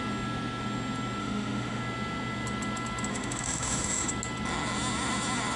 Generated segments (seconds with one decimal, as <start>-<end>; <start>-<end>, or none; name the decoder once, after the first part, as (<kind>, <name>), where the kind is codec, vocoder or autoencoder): 1.2-1.8 (autoencoder, DAC-VAE); 3.1-4.1